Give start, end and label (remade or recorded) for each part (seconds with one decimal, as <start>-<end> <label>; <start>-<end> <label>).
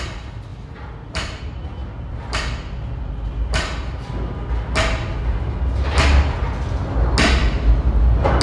0.0-8.4 recorded